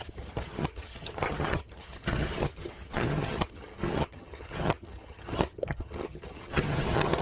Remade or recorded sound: remade